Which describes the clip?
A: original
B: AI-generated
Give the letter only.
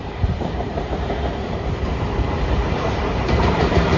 B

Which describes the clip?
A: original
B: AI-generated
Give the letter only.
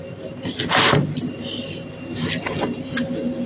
A